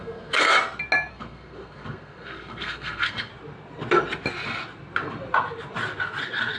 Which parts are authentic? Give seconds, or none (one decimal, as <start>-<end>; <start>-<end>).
0.5-1.1; 3.3-6.6